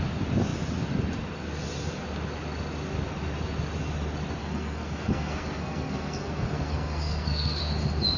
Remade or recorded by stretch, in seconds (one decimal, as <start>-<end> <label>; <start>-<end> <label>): 0.0-4.4 recorded; 4.4-7.6 remade; 7.6-8.2 recorded